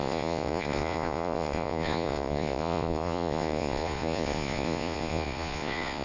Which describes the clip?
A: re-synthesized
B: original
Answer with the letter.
A